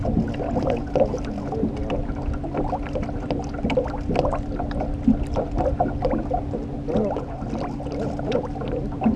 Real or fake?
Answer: real